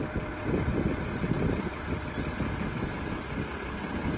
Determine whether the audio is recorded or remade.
recorded